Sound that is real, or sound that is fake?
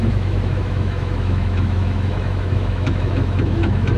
fake